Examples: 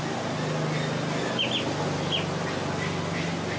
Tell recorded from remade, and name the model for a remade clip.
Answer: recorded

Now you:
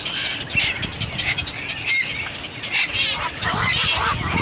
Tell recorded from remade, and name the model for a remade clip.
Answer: recorded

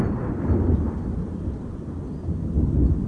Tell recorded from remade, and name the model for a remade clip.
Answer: recorded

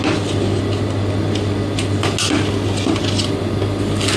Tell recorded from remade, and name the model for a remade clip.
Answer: recorded